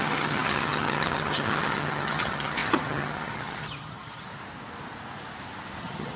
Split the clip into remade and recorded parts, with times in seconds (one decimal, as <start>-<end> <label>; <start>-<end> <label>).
0.0-4.3 remade; 4.3-5.8 recorded; 5.8-6.2 remade